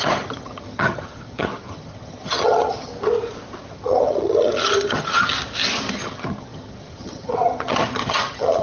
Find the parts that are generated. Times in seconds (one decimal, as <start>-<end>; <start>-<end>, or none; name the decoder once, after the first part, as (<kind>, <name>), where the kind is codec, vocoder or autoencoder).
0.0-2.9 (vocoder, HiFi-GAN); 3.7-5.3; 5.9-8.6